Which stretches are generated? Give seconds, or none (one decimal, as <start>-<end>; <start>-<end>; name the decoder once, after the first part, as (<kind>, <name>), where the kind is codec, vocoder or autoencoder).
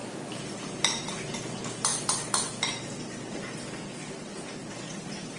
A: none